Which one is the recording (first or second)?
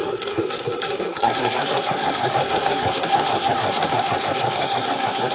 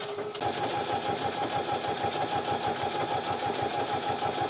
second